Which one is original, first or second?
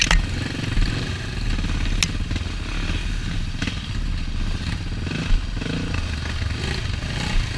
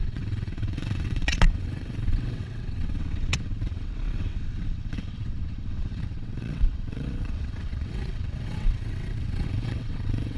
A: first